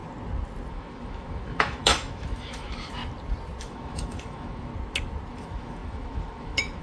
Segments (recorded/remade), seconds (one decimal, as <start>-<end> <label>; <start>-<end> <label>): 0.0-0.7 recorded; 0.7-3.0 remade; 3.0-3.6 recorded; 3.6-4.7 remade; 4.7-5.3 recorded; 5.3-6.8 remade

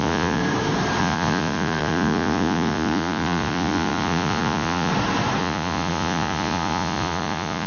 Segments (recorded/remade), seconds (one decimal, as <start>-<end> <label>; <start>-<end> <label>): 0.0-0.4 remade; 0.4-1.0 recorded; 1.0-4.9 remade; 4.9-5.4 recorded; 5.4-7.7 remade

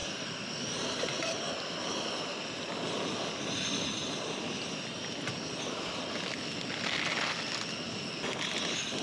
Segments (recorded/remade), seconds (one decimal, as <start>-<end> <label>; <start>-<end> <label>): 0.0-9.0 recorded

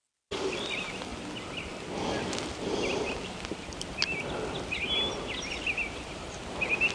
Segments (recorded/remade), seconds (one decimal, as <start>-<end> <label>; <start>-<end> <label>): 0.0-6.9 recorded

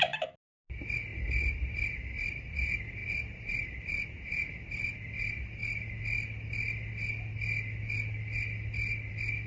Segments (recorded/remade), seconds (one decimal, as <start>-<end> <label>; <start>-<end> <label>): 0.0-9.5 recorded

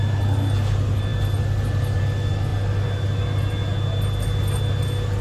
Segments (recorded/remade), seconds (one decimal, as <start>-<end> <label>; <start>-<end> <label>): 0.0-5.2 recorded

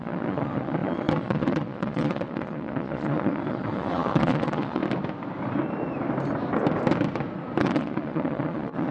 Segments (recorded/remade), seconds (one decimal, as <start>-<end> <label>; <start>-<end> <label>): 0.0-4.8 remade; 4.8-7.6 recorded; 7.6-8.9 remade